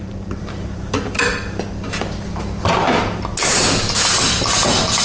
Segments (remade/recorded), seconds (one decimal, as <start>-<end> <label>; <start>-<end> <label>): 0.0-1.3 remade; 1.3-2.6 recorded; 2.6-3.3 remade; 3.3-5.0 recorded